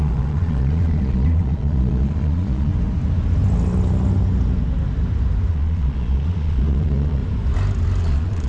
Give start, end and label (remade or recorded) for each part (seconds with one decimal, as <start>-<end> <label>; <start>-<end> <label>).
0.0-2.7 remade; 2.7-5.5 recorded; 5.5-7.2 remade; 7.2-8.0 recorded; 8.0-8.5 remade